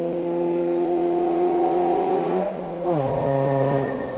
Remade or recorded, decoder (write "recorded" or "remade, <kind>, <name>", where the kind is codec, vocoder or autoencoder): remade, vocoder, Vocos